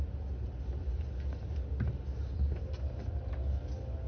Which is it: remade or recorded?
recorded